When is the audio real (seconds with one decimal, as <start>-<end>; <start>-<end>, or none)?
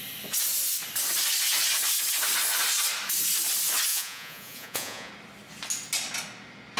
0.0-3.9; 5.1-6.8